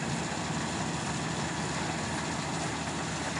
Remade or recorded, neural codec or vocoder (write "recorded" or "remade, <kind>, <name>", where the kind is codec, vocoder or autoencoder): recorded